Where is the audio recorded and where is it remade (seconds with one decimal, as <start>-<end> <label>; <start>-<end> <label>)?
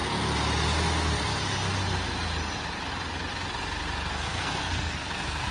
0.0-4.1 recorded; 4.1-5.5 remade